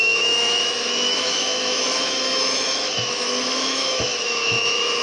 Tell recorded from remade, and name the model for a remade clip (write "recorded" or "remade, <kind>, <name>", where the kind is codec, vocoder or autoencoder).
remade, autoencoder, DAC-VAE